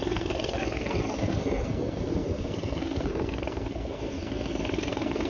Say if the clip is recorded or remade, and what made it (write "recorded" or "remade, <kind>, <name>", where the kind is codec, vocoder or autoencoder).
remade, codec, SNAC